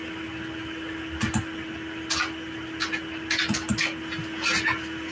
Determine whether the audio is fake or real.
real